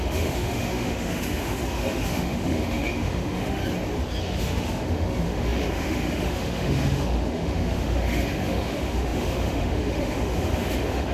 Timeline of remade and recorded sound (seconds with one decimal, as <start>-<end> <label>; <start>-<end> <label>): 0.0-3.6 remade; 3.6-4.2 recorded; 4.2-11.1 remade